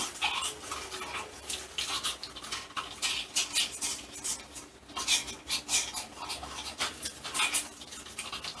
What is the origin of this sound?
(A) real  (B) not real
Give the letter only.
A